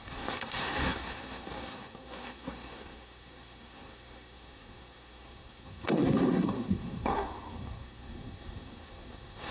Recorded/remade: remade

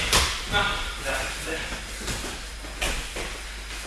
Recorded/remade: recorded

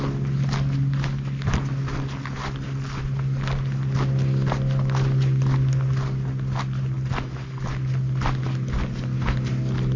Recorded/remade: recorded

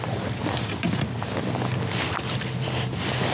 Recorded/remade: recorded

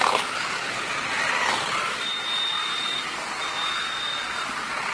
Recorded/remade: recorded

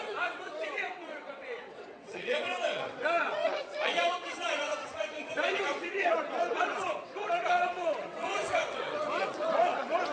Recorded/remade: remade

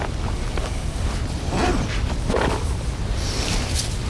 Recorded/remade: recorded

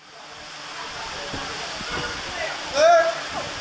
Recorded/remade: recorded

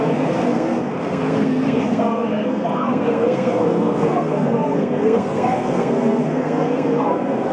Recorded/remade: remade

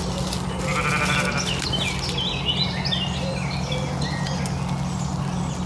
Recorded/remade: recorded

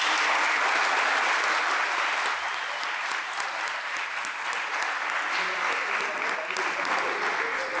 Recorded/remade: recorded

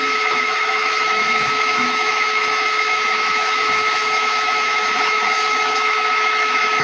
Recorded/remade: remade